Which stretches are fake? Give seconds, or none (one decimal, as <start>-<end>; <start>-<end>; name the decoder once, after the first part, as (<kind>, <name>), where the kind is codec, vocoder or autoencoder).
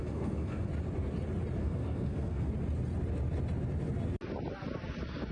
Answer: 0.0-0.7 (codec, SNAC); 1.6-2.5